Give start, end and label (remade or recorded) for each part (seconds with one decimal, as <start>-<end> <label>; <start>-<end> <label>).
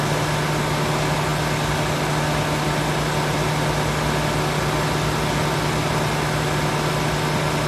0.0-7.7 recorded